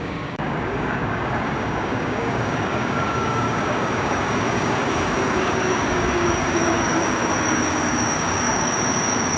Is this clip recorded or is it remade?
remade